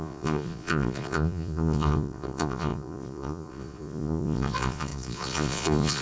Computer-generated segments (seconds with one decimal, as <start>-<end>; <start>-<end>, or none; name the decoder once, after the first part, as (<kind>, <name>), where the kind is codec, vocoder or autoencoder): 0.0-6.0 (vocoder, Vocos)